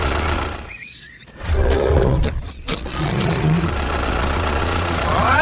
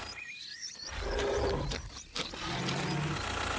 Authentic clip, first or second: second